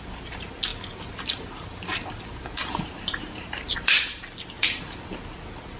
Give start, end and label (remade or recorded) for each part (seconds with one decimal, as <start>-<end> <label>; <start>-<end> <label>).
0.0-5.8 recorded